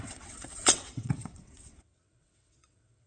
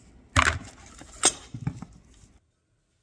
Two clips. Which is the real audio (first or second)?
second